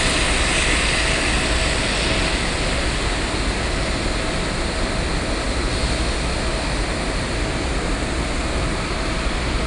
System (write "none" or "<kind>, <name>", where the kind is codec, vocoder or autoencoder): none